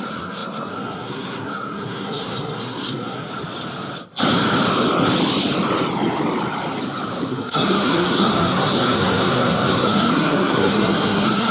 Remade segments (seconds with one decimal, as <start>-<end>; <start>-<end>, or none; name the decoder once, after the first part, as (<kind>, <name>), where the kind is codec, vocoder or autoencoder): 0.0-3.3 (codec, SNAC); 7.3-11.5